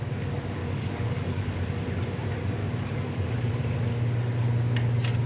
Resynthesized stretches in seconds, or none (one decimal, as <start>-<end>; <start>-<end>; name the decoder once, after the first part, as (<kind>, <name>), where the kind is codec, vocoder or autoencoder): 0.6-1.6 (codec, DAC); 2.6-3.5